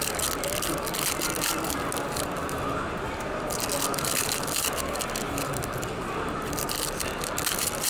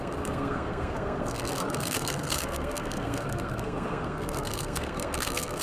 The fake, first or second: second